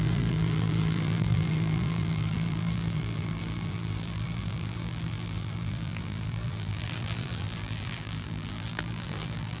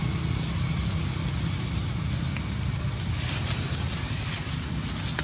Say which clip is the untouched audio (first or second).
second